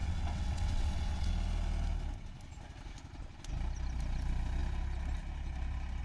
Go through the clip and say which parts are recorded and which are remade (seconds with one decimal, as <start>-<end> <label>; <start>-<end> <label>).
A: 0.0-1.3 remade; 1.3-6.0 recorded